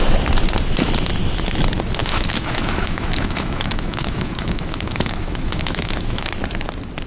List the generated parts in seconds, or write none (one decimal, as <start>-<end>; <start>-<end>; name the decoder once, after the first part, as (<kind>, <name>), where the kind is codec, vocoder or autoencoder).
2.0-6.3 (autoencoder, DAC-VAE)